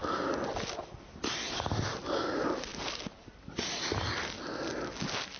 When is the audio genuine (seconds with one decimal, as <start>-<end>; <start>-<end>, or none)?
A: 0.0-5.4